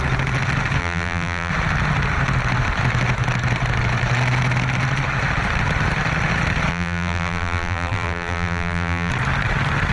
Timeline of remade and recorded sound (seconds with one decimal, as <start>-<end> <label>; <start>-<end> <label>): 0.0-0.8 recorded; 0.8-1.5 remade; 1.5-6.7 recorded; 6.7-9.1 remade; 9.1-9.9 recorded